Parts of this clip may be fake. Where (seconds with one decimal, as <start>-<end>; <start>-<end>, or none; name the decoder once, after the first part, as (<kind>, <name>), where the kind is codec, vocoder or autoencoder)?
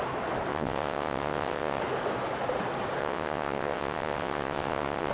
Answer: 0.5-1.8 (vocoder, WaveNeXt); 3.0-5.1